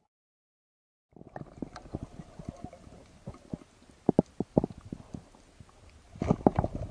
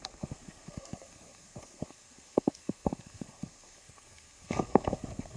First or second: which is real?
first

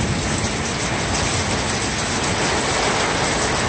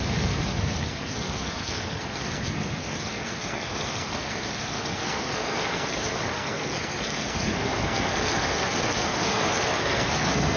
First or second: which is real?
first